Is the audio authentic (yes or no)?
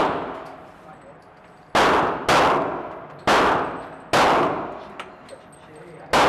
yes